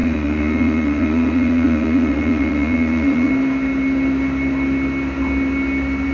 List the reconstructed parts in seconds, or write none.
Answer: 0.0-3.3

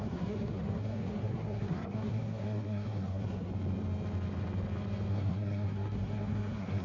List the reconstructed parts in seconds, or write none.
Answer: 0.0-3.5; 5.1-6.8

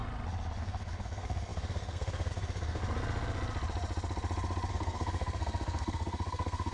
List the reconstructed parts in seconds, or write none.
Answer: 0.6-2.8; 4.7-6.7

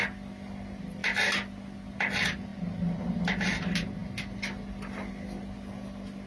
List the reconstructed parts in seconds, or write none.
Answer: none

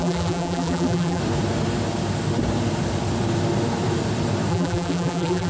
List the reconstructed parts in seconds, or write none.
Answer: 0.0-1.2; 4.5-5.5

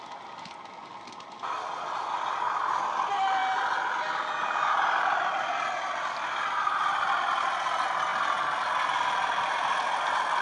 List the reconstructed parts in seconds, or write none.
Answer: none

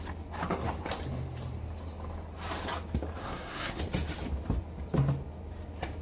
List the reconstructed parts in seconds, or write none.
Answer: 3.2-3.8

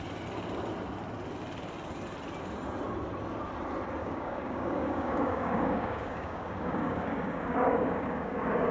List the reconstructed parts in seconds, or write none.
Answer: 4.0-8.7